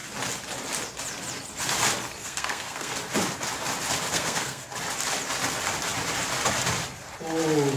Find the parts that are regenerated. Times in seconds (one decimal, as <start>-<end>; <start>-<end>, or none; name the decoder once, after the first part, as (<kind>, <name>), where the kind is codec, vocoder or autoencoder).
2.2-2.9 (codec, SNAC); 4.1-4.7